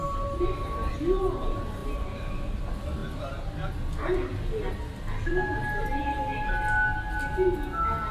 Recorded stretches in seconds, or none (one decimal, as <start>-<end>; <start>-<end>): 0.9-1.8; 2.3-8.1